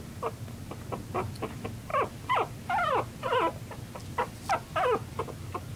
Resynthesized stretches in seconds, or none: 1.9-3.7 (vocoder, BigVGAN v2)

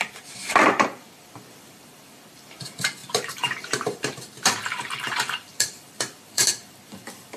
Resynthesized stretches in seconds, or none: 0.0-7.4 (vocoder, BigVGAN v2)

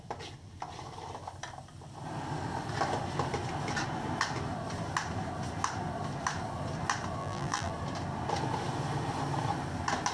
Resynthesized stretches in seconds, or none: 7.2-7.7 (vocoder, BigVGAN v2)

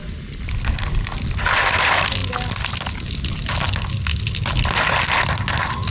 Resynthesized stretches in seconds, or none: none